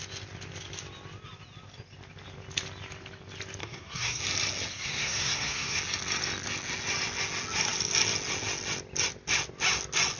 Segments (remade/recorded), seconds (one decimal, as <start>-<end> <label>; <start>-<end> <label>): 0.0-3.6 recorded; 3.6-4.2 remade; 4.2-4.7 recorded; 4.7-5.8 remade; 5.8-10.2 recorded